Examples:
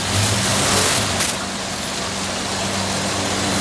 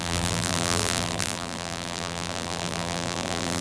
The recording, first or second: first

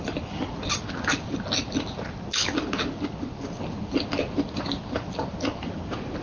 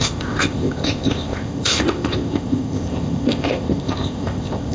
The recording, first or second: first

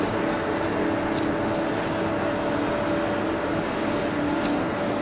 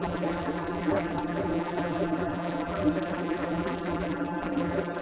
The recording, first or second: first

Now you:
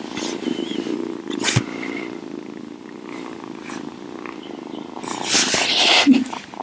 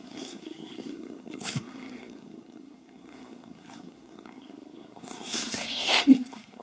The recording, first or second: first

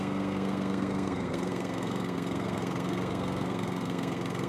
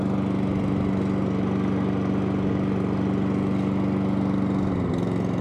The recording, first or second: second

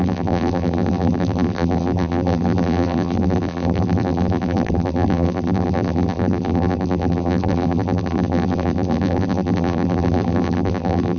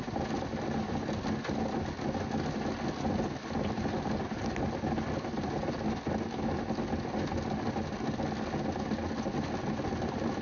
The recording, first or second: second